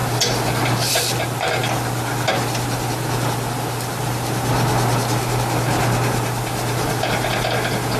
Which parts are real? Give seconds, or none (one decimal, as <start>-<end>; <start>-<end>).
0.0-8.0